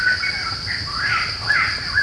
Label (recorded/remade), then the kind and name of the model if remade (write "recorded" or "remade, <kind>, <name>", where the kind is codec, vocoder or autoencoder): recorded